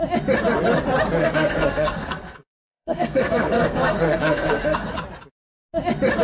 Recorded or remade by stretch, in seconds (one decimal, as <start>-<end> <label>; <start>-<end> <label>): 0.0-1.2 recorded; 1.2-4.9 remade; 4.9-6.2 recorded